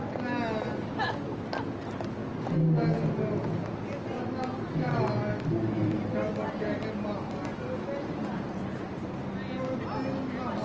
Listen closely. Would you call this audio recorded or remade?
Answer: recorded